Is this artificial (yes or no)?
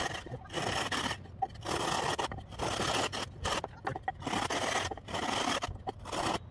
no